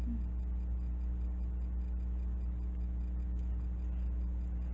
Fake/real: real